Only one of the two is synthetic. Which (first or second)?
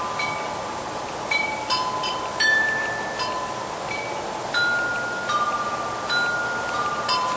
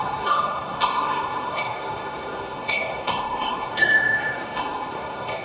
second